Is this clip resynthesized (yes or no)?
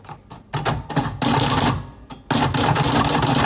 no